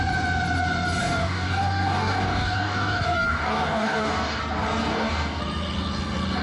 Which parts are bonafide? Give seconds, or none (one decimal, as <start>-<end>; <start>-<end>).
0.0-1.0; 4.4-4.9; 5.4-6.4